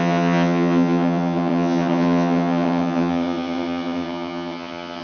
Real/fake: fake